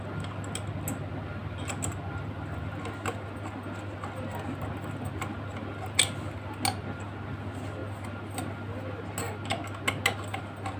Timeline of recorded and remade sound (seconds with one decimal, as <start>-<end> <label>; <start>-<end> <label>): 0.0-10.8 recorded